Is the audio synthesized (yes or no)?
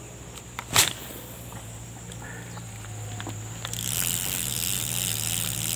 no